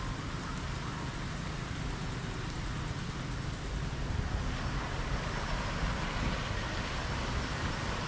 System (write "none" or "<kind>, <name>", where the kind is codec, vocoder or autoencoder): none